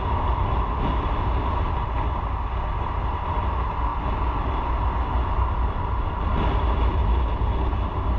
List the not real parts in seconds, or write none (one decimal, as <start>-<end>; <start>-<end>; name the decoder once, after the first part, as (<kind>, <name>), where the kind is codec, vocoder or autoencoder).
none